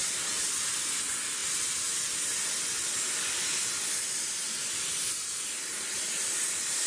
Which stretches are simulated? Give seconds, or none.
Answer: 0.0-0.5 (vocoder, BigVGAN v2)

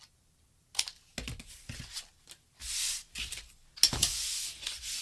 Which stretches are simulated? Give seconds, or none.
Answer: 4.0-5.0 (vocoder, Vocos)

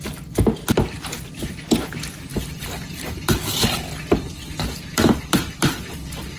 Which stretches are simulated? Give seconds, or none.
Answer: 2.3-6.4 (vocoder, BigVGAN v2)

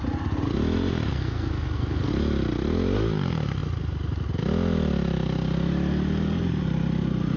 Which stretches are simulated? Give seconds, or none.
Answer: 1.1-2.1 (codec, SNAC)

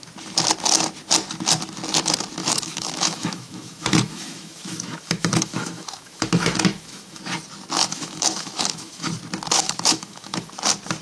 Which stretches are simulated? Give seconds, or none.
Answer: 2.4-7.2 (autoencoder, DAC-VAE); 7.8-9.1; 9.6-10.5

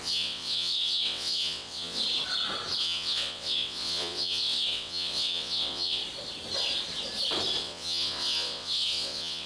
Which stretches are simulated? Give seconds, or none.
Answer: 0.0-2.0 (vocoder, WaveNeXt); 2.8-6.0; 7.6-9.5